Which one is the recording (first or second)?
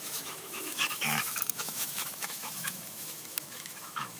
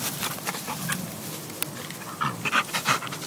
second